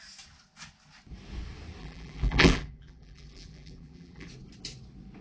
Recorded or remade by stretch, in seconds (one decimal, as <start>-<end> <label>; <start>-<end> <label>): 0.0-1.8 recorded; 1.8-4.3 remade; 4.3-5.2 recorded